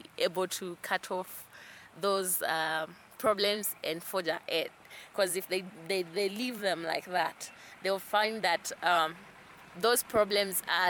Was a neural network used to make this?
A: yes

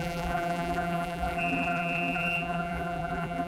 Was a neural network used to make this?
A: yes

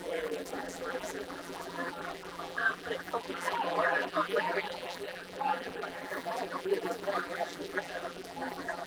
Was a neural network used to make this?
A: yes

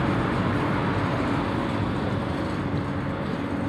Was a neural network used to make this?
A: no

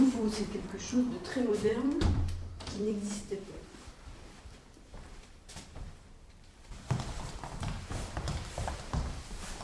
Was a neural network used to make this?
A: yes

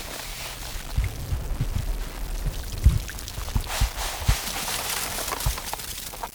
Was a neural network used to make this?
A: no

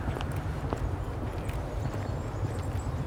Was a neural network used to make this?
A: yes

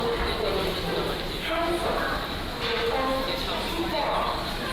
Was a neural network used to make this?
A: no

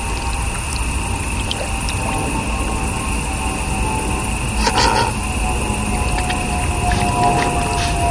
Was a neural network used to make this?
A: no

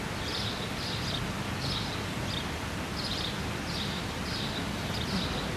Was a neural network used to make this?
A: no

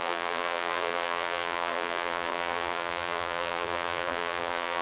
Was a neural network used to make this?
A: yes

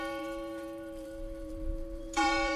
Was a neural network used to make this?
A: yes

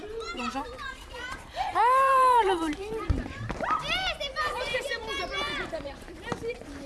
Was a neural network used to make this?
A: yes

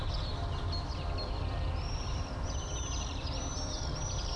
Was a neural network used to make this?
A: yes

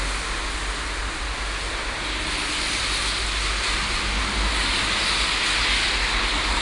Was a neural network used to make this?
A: no